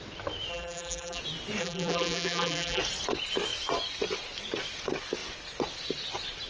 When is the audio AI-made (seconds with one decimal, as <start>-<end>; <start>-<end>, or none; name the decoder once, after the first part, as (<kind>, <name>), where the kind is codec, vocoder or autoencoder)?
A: 0.5-1.2 (vocoder, BigVGAN v2); 1.6-2.8